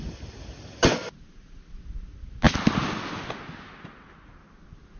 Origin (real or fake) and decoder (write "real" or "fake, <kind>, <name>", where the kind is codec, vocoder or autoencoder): real